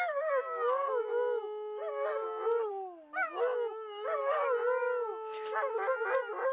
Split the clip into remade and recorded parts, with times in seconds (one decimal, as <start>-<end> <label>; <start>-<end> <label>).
0.0-6.5 recorded